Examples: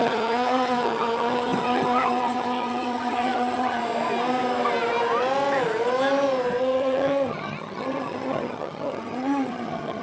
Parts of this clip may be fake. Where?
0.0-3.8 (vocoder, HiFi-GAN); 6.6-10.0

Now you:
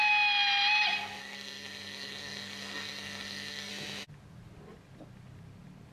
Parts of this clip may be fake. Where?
1.2-3.7 (codec, SNAC)

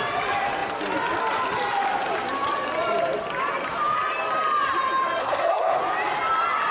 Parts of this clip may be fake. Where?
5.2-5.8 (codec, SNAC)

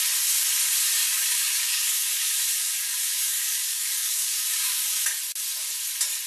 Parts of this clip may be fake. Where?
1.0-4.8 (codec, DAC)